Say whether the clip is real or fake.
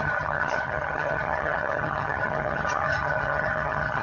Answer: fake